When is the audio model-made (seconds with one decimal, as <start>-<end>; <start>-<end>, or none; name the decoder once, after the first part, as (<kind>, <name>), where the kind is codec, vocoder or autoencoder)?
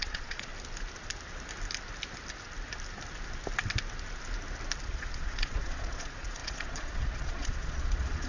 0.0-0.5 (vocoder, Vocos); 4.8-8.3